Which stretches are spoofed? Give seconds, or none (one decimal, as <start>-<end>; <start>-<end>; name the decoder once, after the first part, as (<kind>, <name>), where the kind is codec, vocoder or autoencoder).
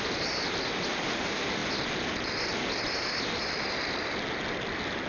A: none